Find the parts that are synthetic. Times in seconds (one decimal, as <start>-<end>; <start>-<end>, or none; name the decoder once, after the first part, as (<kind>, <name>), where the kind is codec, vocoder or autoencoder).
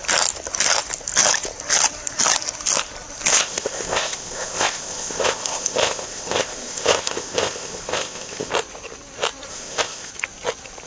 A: 3.3-8.5 (codec, ZipCodec); 9.5-10.1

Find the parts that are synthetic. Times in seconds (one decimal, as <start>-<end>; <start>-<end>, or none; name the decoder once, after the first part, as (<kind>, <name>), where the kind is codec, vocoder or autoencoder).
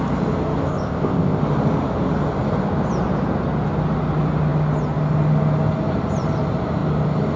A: 0.7-1.4 (codec, ZipCodec)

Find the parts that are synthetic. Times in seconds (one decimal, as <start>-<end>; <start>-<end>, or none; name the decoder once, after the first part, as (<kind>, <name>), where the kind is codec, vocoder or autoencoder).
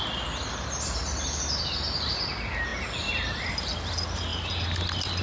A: none